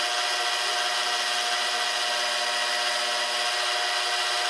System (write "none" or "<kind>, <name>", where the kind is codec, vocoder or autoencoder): none